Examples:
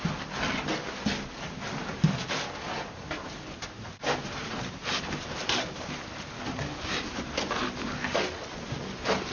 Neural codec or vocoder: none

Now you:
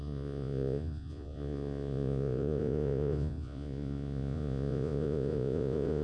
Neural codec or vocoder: vocoder, Vocos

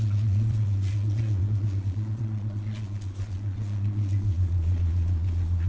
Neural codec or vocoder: vocoder, Vocos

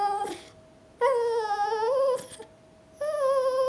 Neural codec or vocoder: none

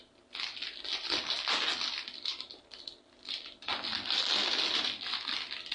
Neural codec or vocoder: none